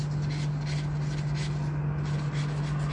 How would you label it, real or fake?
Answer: real